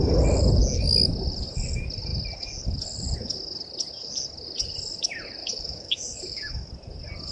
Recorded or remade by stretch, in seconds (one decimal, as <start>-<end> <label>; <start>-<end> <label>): 0.0-5.4 recorded; 5.4-6.5 remade; 6.5-7.3 recorded